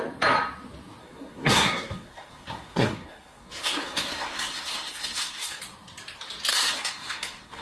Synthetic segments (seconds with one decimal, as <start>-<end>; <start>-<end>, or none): 1.0-5.6; 6.5-7.6